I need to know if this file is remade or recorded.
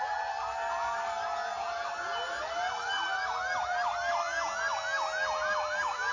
recorded